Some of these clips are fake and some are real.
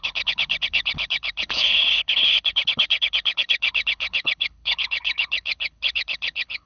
fake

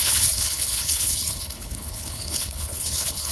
fake